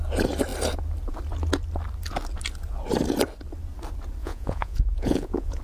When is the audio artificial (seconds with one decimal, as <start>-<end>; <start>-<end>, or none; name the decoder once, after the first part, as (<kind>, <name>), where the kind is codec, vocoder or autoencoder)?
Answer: 4.2-5.6 (vocoder, Vocos)